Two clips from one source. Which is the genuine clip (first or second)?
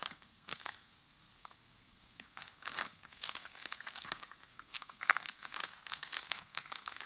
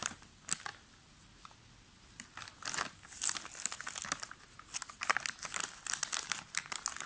second